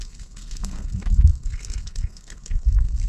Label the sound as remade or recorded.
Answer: remade